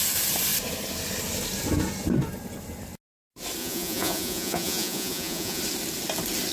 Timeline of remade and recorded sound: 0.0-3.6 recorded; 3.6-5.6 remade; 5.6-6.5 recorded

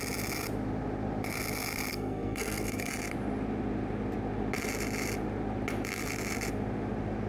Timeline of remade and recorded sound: 0.0-1.9 recorded; 1.9-2.9 remade; 2.9-7.3 recorded